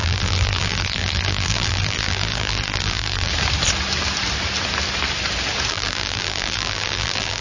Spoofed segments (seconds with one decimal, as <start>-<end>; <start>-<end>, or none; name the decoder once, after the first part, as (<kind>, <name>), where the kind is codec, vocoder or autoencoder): 0.0-3.3 (vocoder, BigVGAN v2); 5.7-7.4